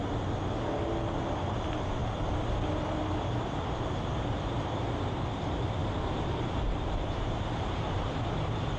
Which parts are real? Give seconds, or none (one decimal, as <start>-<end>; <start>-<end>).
0.0-5.8; 8.1-8.8

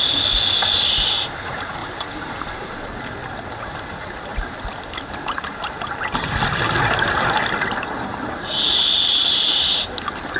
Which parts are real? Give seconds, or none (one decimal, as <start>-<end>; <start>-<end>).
0.0-1.8; 2.5-10.4

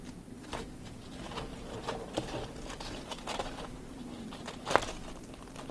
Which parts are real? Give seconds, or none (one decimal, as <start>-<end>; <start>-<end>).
0.0-1.5; 4.7-5.7

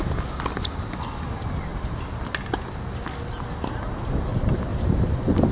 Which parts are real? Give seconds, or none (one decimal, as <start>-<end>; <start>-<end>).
0.0-4.7